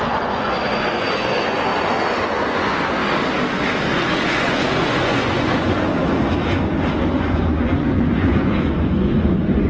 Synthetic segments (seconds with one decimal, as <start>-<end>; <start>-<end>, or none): 0.0-3.0; 3.9-5.9; 7.1-9.7